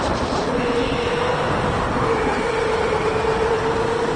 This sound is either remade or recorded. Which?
recorded